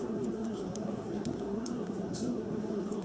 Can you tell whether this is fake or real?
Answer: fake